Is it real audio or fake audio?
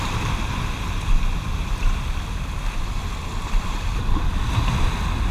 real